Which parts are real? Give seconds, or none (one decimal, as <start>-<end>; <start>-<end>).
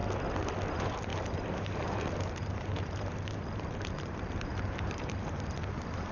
0.0-0.7